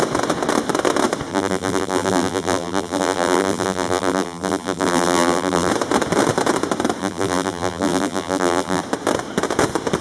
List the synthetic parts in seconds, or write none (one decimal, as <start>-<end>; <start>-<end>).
1.3-5.7; 7.0-8.8